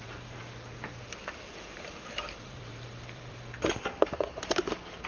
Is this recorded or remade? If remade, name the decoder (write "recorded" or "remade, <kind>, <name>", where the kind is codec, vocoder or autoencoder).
remade, vocoder, BigVGAN v2